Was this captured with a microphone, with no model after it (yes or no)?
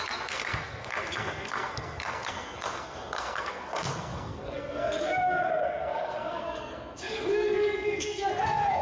no